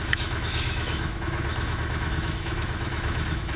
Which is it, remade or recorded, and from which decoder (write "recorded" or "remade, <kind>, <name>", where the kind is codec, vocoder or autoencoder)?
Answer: remade, autoencoder, DAC-VAE